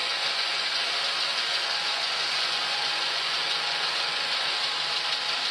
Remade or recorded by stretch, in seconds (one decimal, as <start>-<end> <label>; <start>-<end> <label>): 0.0-0.9 remade; 0.9-1.3 recorded; 1.3-4.6 remade; 4.6-5.5 recorded